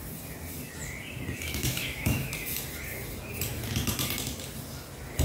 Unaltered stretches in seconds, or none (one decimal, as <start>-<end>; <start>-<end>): 0.0-1.6; 2.3-5.2